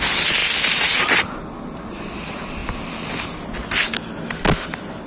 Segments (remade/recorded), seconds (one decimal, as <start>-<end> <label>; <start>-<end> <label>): 0.0-5.1 recorded